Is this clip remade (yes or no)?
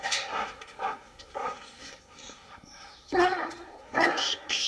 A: yes